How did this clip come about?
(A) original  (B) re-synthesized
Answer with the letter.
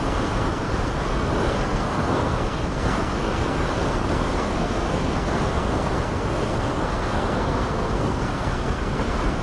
B